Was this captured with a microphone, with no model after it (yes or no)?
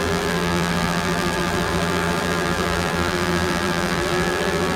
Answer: no